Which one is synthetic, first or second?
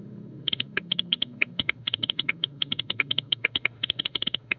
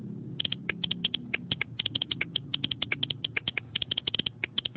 first